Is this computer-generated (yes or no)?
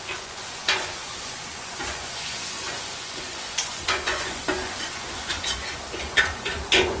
yes